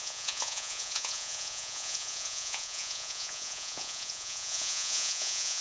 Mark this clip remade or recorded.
remade